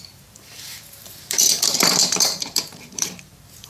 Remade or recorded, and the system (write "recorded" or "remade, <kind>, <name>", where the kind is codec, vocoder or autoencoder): remade, vocoder, BigVGAN v2